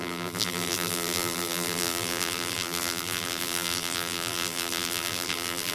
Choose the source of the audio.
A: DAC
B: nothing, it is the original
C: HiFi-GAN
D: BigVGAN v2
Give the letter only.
D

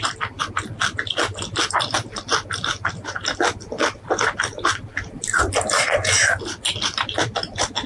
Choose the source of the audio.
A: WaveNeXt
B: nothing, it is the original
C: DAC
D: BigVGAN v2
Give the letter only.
B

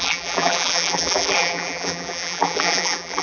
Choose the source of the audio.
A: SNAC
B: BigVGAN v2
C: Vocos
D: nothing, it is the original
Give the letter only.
B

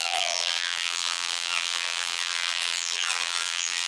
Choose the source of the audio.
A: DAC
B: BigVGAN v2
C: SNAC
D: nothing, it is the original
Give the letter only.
B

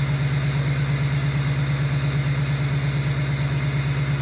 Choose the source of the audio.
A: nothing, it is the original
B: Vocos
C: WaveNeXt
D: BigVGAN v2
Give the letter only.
A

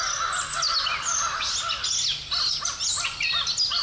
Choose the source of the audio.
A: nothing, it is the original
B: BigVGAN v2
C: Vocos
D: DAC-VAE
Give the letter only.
A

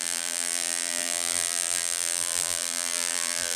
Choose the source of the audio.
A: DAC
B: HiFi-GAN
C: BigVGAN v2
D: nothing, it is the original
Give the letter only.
C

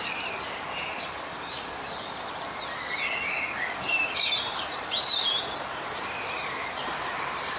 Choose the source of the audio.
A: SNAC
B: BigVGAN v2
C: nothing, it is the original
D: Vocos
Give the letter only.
B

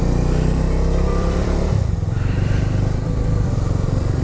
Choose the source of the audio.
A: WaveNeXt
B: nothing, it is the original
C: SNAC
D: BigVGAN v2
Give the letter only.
D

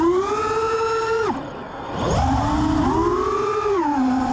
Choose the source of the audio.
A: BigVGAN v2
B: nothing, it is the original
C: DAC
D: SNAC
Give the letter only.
B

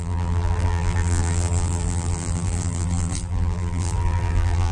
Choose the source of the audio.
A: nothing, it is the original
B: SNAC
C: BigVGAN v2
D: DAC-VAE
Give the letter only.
C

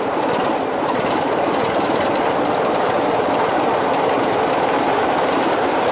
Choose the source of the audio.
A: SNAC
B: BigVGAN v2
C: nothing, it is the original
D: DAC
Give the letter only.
B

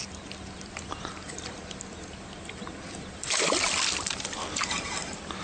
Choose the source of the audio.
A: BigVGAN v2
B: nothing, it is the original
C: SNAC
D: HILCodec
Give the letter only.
A